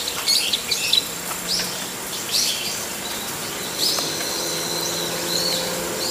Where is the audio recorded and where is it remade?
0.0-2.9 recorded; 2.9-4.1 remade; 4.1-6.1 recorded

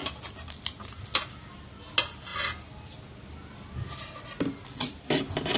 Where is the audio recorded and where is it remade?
0.0-5.6 recorded

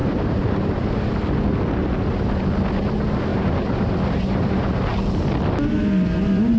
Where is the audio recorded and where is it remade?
0.0-1.1 remade; 1.1-3.3 recorded; 3.3-5.0 remade; 5.0-6.6 recorded